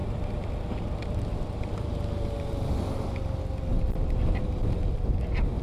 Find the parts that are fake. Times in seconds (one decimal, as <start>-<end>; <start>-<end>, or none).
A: none